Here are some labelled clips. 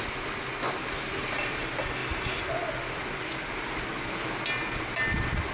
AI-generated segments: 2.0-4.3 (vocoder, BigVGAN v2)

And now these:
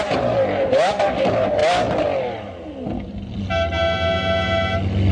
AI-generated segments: 0.0-1.6 (vocoder, BigVGAN v2)

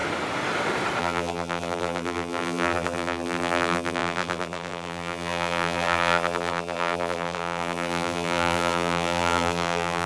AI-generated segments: 1.0-10.1 (vocoder, BigVGAN v2)

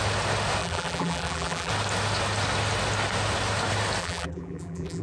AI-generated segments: 0.6-1.7 (vocoder, BigVGAN v2); 4.0-5.0

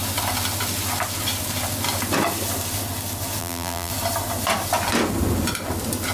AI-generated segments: 3.4-3.9 (vocoder, BigVGAN v2)

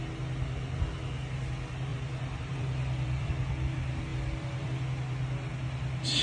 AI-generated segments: 1.9-3.3 (vocoder, BigVGAN v2); 4.1-4.8

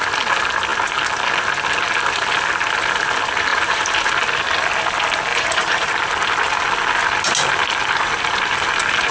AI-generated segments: 3.5-4.1 (vocoder, BigVGAN v2); 5.3-5.9

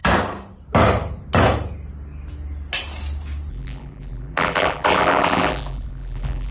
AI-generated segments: 3.5-6.5 (vocoder, BigVGAN v2)